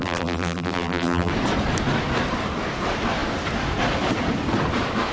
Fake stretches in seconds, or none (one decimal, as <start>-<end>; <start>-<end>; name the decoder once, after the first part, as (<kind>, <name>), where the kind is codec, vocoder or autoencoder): 0.0-1.3 (vocoder, BigVGAN v2)